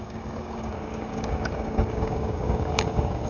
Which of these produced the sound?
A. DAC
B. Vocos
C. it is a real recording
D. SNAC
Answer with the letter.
A